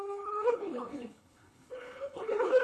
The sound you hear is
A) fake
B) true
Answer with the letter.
A